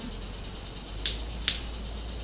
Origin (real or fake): real